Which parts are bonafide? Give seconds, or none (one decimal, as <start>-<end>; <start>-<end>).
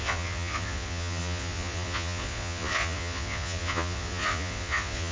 none